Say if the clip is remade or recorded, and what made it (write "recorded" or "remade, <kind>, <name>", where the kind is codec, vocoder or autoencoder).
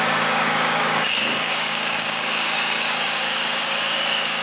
remade, codec, DAC